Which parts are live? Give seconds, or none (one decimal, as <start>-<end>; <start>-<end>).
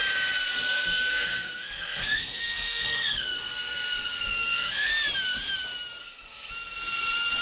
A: 0.0-0.5; 4.9-6.0; 6.5-7.4